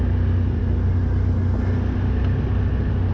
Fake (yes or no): no